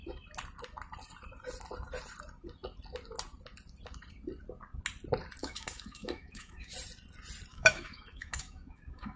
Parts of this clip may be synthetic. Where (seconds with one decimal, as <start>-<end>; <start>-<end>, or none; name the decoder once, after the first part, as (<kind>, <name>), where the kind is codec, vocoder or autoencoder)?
5.4-6.7 (autoencoder, DAC-VAE); 7.5-9.2